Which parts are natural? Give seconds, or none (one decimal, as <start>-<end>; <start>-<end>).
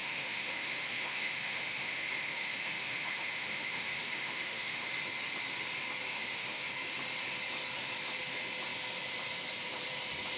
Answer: 4.9-6.1; 6.6-10.4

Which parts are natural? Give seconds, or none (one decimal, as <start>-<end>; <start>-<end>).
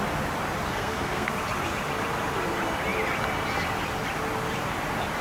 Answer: 0.0-0.7; 1.3-5.2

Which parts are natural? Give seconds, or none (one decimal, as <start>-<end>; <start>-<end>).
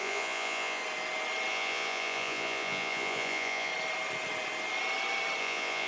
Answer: 0.8-1.5; 3.7-5.4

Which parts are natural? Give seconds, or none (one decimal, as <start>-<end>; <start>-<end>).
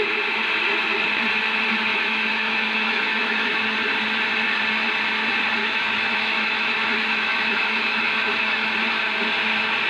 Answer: 0.0-1.9; 3.6-5.6; 8.7-9.9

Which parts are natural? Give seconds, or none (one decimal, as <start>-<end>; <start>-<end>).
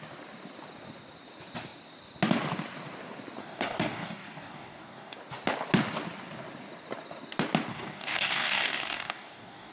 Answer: 0.0-3.4; 5.2-7.7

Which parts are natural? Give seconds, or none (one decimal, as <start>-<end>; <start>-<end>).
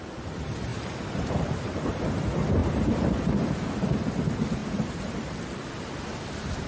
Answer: 0.0-0.7; 2.0-2.6; 3.1-4.6; 5.7-6.7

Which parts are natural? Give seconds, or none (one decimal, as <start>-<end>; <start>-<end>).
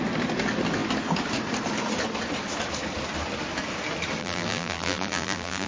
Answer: 0.0-4.2